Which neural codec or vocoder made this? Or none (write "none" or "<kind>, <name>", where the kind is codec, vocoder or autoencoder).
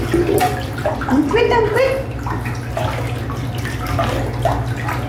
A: none